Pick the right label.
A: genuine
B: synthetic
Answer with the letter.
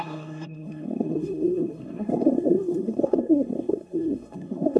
B